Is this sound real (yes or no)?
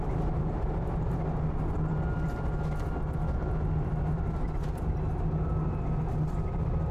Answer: yes